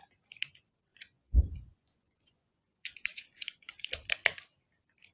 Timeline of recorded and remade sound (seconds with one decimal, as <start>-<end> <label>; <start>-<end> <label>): 0.0-0.9 recorded; 0.9-3.9 remade; 3.9-5.1 recorded